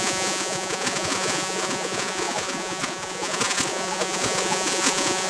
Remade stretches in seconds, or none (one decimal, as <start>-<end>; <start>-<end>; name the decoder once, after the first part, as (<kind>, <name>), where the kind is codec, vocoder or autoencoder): 0.0-5.3 (vocoder, Vocos)